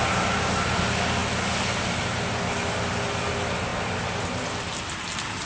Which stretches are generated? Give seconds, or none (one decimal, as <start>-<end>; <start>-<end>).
none